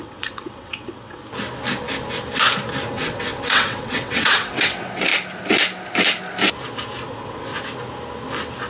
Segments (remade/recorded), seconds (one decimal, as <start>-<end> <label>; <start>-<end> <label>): 0.0-1.2 remade; 1.2-2.9 recorded; 2.9-5.1 remade; 5.1-7.1 recorded; 7.1-7.5 remade; 7.5-8.7 recorded